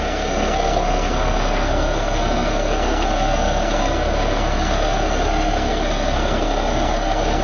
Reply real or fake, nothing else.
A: fake